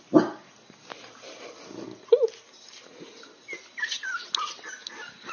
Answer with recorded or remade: recorded